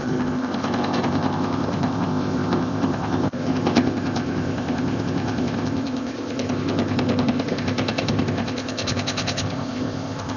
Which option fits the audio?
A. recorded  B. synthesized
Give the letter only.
B